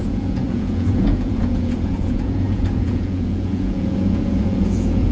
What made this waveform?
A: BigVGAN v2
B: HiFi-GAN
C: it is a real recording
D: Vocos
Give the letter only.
D